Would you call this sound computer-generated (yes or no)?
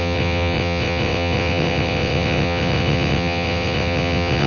yes